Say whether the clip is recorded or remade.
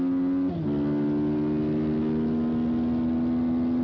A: recorded